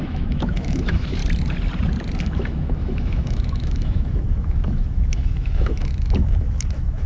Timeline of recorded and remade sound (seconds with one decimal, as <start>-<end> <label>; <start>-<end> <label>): 0.0-1.2 remade; 1.2-2.2 recorded; 2.2-7.1 remade